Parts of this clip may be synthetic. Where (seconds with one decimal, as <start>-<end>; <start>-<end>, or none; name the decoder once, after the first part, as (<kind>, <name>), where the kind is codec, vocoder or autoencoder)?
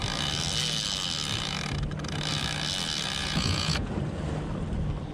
3.2-3.9 (vocoder, Vocos)